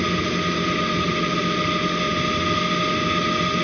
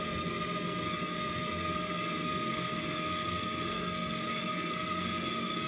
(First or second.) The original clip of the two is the first